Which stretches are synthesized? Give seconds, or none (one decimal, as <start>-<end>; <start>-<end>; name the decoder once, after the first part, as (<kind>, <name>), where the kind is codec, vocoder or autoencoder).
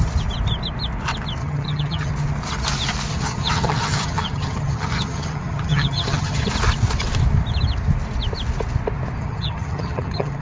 1.4-2.1 (vocoder, HiFi-GAN); 3.1-6.5; 9.2-10.4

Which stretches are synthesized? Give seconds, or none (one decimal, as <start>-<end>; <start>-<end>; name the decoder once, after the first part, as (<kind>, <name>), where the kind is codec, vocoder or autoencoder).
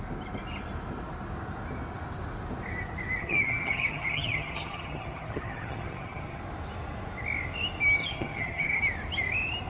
3.2-6.4 (vocoder, HiFi-GAN); 8.0-8.8